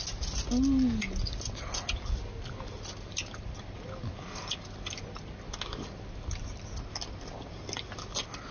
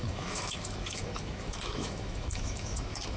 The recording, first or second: first